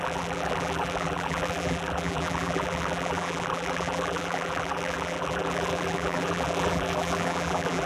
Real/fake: fake